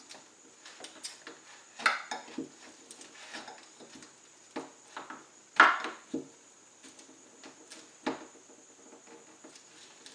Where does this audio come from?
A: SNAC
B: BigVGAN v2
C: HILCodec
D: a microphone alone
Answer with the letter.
D